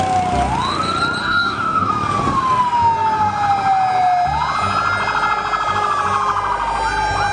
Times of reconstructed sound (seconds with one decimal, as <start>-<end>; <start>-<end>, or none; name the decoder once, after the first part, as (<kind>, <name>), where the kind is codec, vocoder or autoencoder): 1.2-1.9 (codec, DAC)